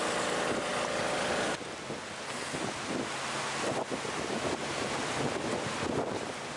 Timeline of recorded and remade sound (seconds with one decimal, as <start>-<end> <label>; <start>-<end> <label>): 0.0-6.6 recorded